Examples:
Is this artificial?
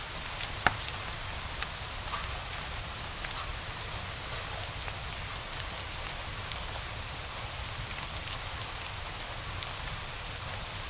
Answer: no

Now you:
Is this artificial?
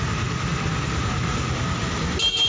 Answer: no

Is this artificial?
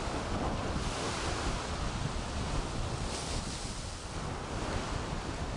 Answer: no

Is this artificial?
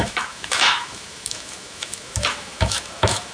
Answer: yes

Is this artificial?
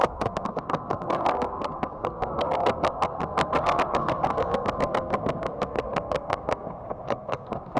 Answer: yes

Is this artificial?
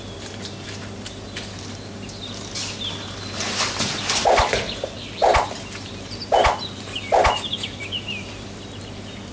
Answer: no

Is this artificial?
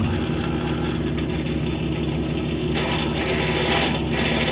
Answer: no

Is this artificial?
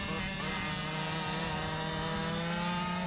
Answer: no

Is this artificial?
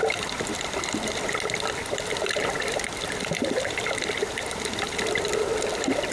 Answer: yes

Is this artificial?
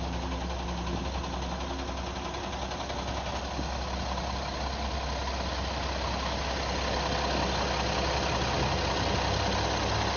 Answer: no